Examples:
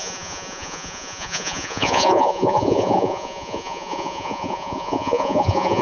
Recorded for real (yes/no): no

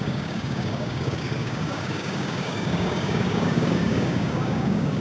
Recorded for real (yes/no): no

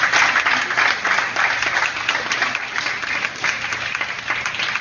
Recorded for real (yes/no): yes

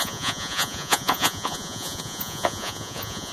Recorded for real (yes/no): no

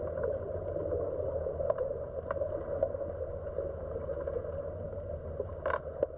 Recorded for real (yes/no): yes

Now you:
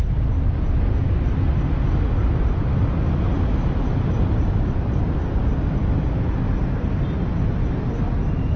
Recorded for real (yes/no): yes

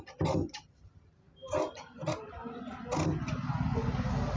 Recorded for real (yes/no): yes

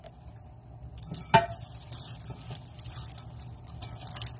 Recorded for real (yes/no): yes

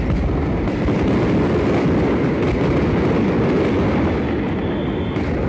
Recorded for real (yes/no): yes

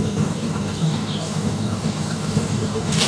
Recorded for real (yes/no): no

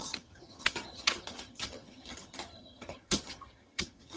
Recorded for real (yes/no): no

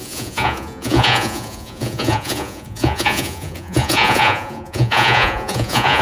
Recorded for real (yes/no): no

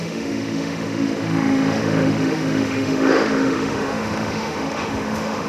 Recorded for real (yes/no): no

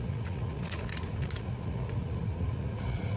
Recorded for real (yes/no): no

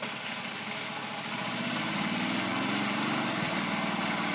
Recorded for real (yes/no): yes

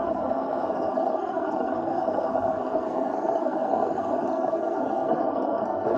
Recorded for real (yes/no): no